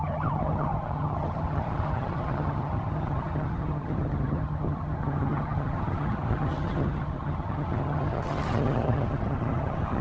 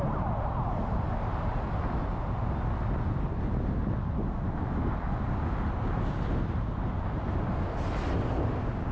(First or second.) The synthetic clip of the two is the first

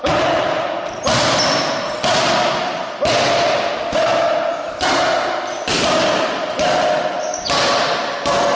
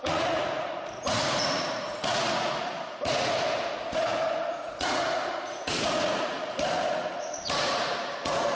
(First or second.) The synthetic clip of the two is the second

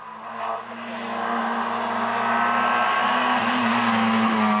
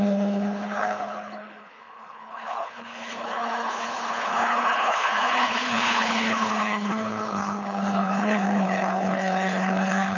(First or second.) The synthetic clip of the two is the second